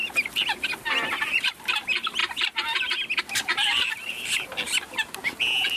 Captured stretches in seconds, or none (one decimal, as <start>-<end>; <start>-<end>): 0.0-5.8